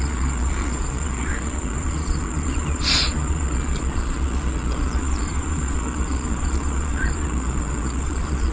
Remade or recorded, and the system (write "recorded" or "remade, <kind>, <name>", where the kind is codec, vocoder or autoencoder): remade, vocoder, Vocos